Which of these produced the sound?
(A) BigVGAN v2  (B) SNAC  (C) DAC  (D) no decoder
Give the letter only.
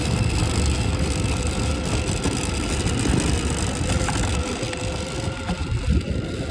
D